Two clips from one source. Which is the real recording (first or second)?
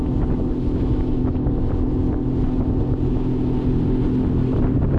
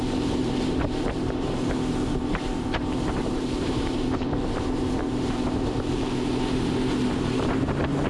first